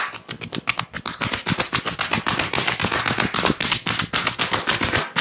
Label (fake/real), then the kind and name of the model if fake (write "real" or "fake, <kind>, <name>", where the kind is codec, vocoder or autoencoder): real